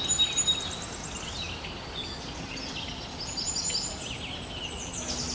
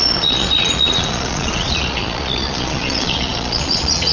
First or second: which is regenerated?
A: second